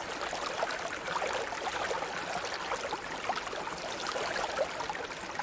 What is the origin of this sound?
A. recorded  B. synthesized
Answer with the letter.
A